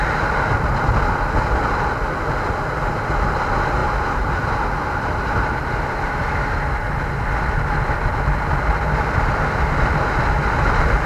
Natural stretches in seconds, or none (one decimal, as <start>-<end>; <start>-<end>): 0.0-11.1